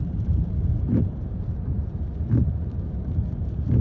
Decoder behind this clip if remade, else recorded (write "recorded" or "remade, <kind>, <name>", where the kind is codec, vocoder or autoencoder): remade, vocoder, BigVGAN v2